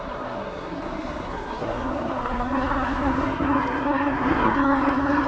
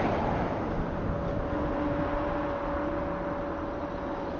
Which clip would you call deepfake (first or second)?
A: first